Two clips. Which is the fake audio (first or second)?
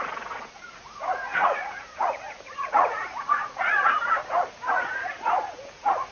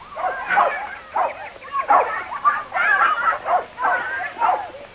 first